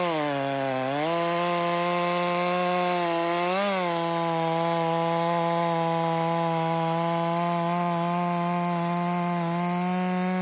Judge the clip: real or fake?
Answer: real